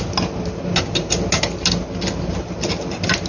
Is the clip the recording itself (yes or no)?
yes